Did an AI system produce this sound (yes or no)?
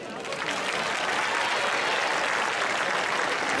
no